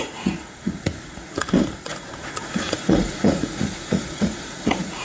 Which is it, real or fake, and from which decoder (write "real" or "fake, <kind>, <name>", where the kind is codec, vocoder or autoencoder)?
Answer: fake, vocoder, Vocos